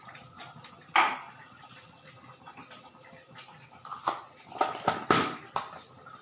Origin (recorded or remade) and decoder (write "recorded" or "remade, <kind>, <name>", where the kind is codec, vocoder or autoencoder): recorded